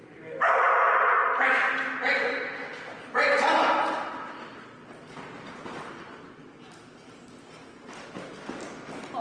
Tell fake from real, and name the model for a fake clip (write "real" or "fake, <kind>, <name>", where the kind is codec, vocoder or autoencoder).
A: real